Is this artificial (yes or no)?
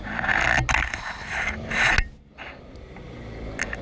no